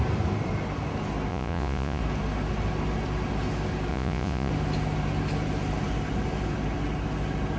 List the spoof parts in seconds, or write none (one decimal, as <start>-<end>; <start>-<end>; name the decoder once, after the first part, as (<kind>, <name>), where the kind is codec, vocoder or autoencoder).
1.3-2.0 (vocoder, Vocos); 3.9-4.5